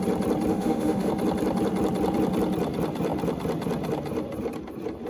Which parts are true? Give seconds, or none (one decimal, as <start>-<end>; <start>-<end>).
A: 0.0-0.5; 1.1-5.1